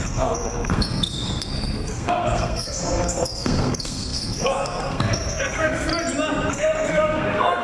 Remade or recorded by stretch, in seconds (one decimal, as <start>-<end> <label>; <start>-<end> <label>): 0.0-5.9 remade; 5.9-6.5 recorded; 6.5-7.6 remade